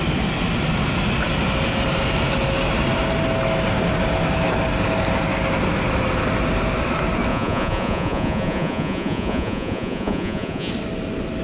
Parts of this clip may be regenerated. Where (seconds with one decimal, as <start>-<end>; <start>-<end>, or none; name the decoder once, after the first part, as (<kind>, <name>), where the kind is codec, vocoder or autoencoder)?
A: 7.3-10.7 (vocoder, Vocos)